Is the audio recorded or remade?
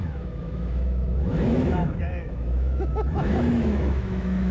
remade